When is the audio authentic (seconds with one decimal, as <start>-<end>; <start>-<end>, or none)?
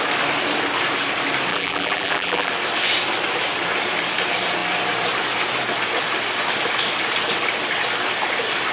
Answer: 0.0-1.5; 2.5-8.7